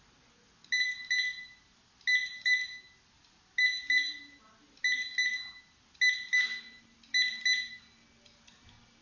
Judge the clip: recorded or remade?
recorded